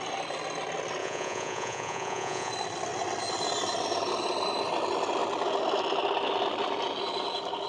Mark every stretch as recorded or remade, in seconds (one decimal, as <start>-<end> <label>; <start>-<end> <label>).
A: 0.0-1.0 recorded; 1.0-2.5 remade; 2.5-7.7 recorded